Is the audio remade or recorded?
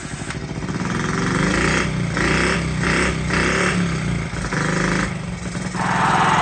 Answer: recorded